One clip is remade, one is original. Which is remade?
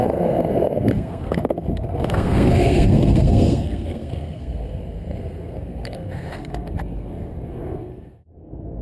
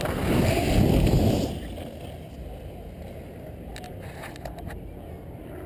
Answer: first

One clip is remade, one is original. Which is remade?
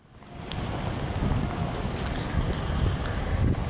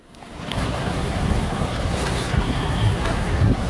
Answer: second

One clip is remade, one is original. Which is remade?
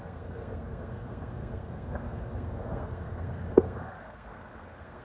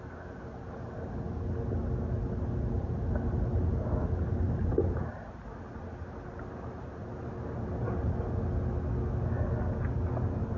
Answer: first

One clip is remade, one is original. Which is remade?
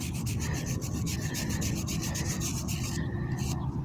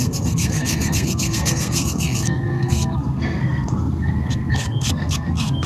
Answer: second